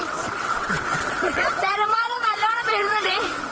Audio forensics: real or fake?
fake